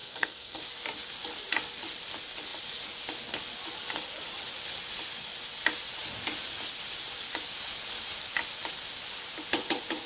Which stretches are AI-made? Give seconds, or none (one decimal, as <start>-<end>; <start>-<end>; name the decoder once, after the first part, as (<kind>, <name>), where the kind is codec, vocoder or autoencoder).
0.0-0.6 (codec, SNAC)